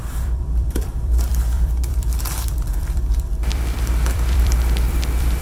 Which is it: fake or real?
fake